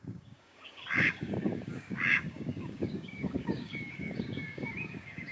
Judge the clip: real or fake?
fake